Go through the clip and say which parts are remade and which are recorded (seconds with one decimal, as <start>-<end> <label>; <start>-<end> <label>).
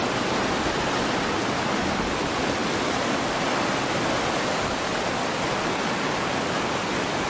0.0-7.3 recorded